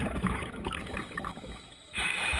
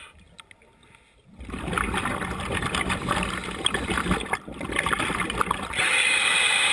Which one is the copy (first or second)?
first